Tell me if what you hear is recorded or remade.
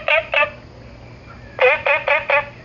recorded